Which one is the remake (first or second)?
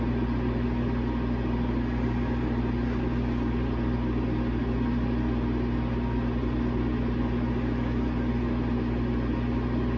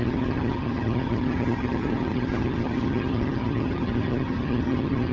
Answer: second